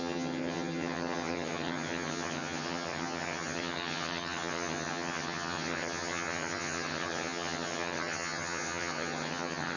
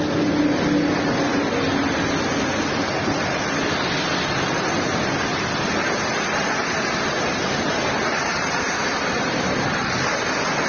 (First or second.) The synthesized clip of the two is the first